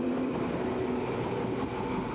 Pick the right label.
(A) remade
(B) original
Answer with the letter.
A